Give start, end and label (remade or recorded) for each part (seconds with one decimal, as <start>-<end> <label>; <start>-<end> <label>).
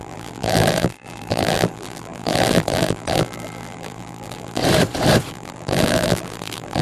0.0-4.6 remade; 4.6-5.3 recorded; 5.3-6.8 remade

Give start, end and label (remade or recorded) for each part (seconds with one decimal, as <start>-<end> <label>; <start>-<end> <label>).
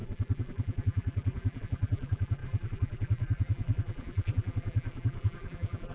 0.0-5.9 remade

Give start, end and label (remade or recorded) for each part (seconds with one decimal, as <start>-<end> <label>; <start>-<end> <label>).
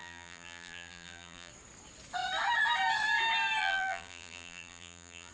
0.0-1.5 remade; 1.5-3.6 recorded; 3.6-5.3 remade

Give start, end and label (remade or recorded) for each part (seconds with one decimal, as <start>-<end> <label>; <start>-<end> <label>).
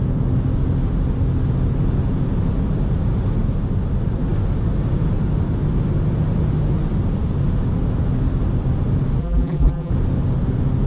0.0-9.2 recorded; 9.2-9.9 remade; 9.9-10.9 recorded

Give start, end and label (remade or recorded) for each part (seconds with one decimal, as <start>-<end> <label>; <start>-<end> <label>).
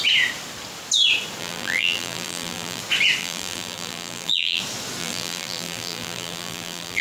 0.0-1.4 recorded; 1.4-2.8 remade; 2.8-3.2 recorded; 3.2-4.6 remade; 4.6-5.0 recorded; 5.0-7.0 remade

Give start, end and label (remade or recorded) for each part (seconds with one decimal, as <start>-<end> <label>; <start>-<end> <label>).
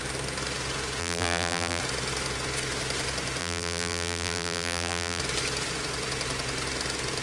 0.0-1.0 recorded; 1.0-1.8 remade; 1.8-3.4 recorded; 3.4-5.2 remade; 5.2-7.2 recorded